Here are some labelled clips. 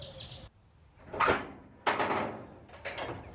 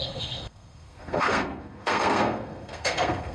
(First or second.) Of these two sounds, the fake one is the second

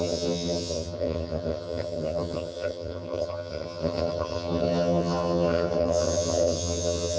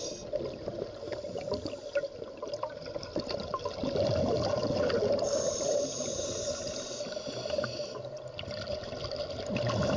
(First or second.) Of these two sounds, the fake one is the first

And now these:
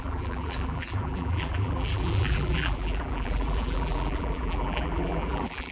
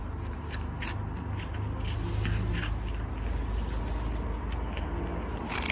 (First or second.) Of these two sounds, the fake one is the first